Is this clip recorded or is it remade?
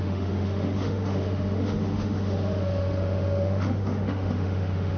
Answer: remade